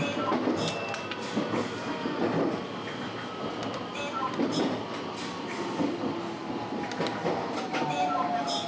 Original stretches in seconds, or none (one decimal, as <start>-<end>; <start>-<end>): 0.0-8.7